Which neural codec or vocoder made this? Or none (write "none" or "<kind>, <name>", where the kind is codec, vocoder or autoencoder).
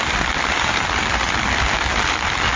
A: vocoder, BigVGAN v2